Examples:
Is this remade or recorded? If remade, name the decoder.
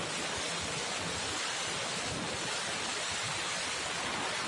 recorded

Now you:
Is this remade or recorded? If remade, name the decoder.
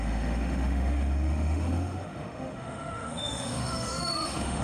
remade, autoencoder, DAC-VAE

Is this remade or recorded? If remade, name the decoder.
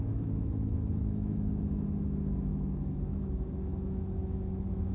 remade, autoencoder, DAC-VAE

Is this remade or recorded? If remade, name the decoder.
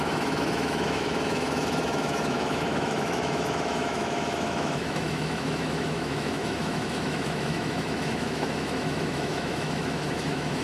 remade, autoencoder, DAC-VAE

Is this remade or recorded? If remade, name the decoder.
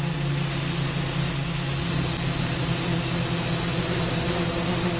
recorded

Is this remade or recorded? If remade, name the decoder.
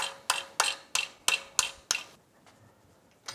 recorded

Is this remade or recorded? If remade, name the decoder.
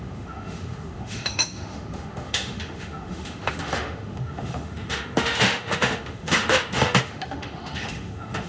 remade, autoencoder, DAC-VAE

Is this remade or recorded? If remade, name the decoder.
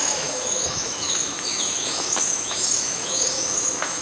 remade, autoencoder, DAC-VAE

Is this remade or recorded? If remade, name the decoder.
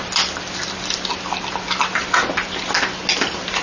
recorded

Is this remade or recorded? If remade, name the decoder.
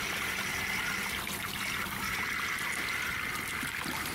recorded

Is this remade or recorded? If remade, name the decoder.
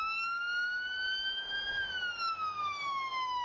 remade, autoencoder, DAC-VAE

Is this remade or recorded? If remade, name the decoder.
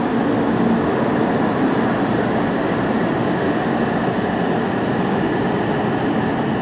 recorded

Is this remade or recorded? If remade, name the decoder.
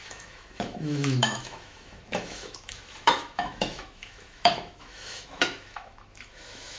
remade, autoencoder, DAC-VAE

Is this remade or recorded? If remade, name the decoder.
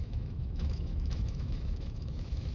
remade, autoencoder, DAC-VAE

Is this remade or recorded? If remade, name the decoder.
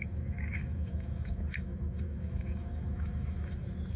remade, autoencoder, DAC-VAE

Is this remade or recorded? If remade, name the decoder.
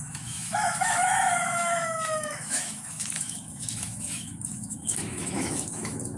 remade, autoencoder, DAC-VAE